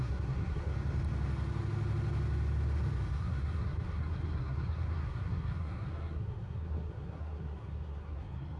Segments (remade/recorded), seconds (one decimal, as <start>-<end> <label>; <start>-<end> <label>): 0.0-0.7 remade; 0.7-3.2 recorded; 3.2-8.6 remade